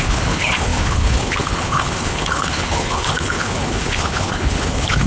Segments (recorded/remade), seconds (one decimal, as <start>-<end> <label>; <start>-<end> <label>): 0.0-5.1 remade